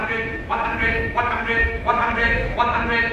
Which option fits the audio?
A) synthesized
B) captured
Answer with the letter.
A